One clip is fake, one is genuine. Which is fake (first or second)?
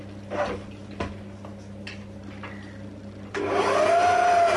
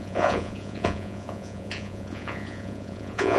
second